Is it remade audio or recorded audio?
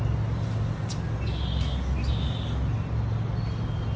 recorded